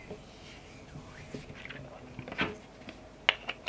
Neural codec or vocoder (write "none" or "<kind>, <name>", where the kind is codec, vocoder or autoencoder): none